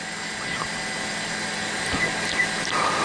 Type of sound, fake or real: real